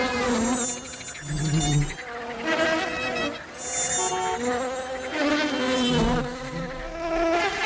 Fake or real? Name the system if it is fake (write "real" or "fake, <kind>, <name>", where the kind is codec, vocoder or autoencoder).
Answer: real